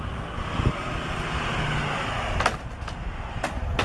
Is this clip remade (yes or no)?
no